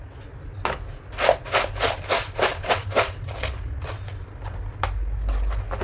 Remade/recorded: recorded